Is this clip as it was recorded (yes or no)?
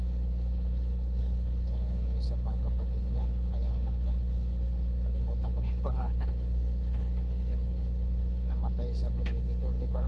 no